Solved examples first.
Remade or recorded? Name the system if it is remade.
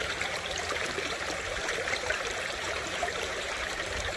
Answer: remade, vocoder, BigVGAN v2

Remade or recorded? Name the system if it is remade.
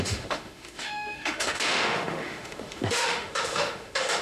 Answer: remade, autoencoder, DAC-VAE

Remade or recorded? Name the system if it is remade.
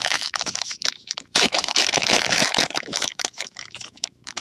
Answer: remade, autoencoder, DAC-VAE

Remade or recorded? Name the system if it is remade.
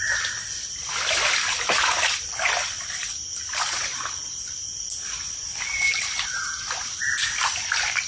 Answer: recorded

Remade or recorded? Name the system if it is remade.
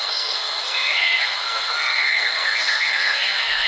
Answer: remade, codec, SNAC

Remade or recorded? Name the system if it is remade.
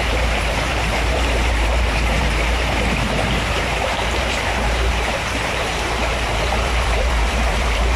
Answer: remade, vocoder, BigVGAN v2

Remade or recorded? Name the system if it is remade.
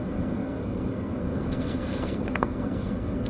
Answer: remade, codec, SNAC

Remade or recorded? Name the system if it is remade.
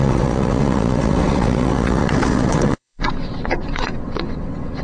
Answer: remade, vocoder, WaveNeXt